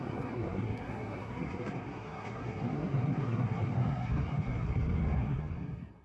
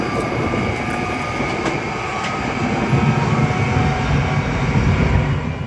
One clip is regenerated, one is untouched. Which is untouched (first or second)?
second